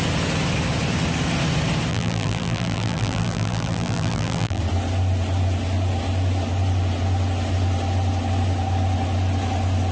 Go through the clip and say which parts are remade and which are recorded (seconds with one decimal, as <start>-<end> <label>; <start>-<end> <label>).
0.0-1.9 recorded; 1.9-4.6 remade; 4.6-9.9 recorded